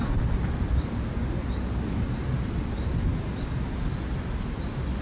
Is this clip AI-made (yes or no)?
no